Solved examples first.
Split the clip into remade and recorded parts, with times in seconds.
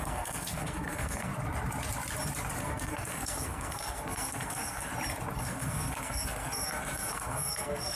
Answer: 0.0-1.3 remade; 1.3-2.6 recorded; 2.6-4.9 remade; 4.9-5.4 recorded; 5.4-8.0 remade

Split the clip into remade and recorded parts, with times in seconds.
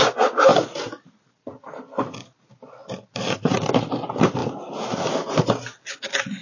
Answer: 0.0-6.4 recorded